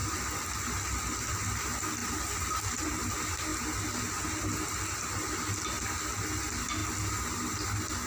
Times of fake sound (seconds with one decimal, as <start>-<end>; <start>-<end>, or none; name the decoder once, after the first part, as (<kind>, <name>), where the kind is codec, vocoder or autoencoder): 0.0-1.3 (vocoder, BigVGAN v2); 2.0-3.1; 6.8-7.5